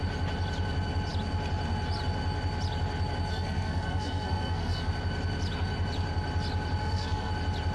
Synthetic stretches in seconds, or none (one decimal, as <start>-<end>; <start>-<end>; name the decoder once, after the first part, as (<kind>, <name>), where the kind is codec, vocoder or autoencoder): 3.3-4.9 (codec, SNAC); 6.8-7.3